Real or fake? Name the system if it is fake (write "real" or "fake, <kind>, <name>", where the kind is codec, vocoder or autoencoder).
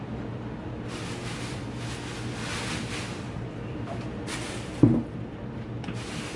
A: real